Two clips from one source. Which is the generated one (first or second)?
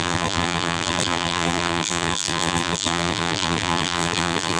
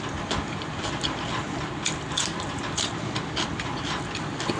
first